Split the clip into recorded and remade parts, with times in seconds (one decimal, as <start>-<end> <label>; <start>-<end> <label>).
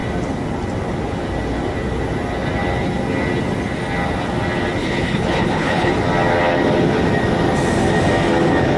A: 0.0-4.8 recorded; 4.8-5.9 remade; 5.9-8.8 recorded